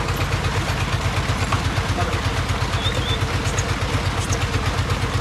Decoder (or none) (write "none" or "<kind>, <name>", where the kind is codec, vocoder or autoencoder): none